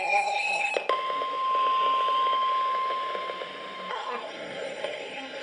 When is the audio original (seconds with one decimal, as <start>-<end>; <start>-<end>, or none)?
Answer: 0.7-3.9